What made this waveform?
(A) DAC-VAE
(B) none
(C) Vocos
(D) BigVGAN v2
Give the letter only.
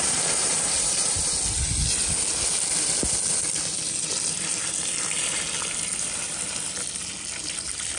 B